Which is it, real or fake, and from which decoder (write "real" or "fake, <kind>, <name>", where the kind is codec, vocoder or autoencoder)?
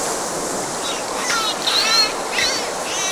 fake, vocoder, BigVGAN v2